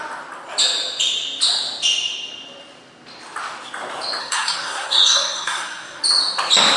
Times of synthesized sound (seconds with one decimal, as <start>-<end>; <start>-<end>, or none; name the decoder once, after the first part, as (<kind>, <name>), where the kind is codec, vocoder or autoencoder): 4.2-6.0 (codec, SNAC)